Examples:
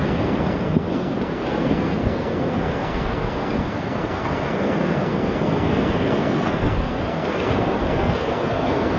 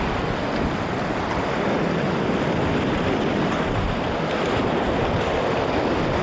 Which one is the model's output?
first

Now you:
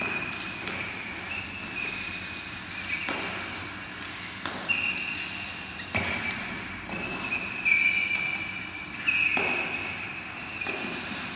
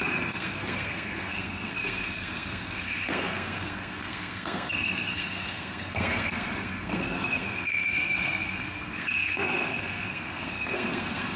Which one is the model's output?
second